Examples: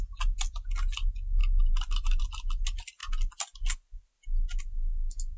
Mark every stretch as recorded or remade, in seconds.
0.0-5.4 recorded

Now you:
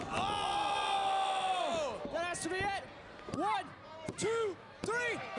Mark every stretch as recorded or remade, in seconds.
0.0-4.2 recorded; 4.2-4.8 remade; 4.8-5.4 recorded

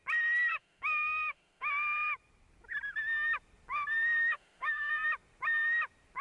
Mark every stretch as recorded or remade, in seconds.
0.0-0.5 recorded; 0.5-1.7 remade; 1.7-4.2 recorded; 4.2-4.9 remade; 4.9-6.2 recorded

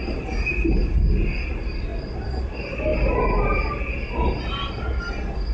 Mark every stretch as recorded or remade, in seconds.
0.0-5.5 recorded

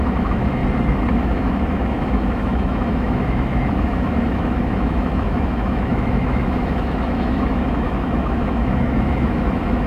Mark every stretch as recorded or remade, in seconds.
0.0-0.6 remade; 0.6-1.2 recorded; 1.2-9.9 remade

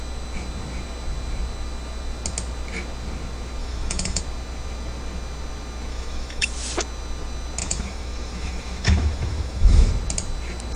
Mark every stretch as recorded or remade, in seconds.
0.0-3.6 recorded; 3.6-4.2 remade; 4.2-5.9 recorded; 5.9-6.5 remade; 6.5-7.6 recorded; 7.6-9.9 remade; 9.9-10.8 recorded